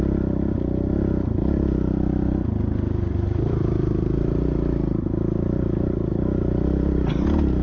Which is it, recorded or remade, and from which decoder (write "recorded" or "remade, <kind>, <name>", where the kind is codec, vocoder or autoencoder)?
recorded